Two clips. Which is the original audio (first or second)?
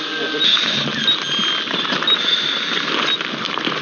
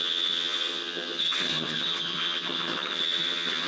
first